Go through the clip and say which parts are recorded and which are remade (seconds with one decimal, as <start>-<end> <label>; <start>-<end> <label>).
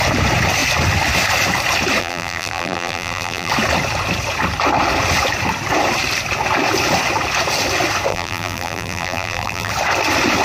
0.0-2.0 recorded; 2.0-3.5 remade; 3.5-8.1 recorded; 8.1-9.7 remade; 9.7-10.4 recorded